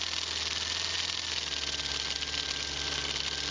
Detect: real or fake real